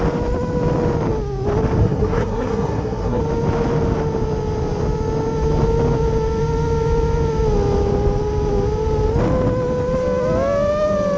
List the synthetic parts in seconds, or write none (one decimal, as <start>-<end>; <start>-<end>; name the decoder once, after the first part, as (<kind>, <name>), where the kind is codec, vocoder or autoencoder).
1.8-3.2 (codec, SNAC)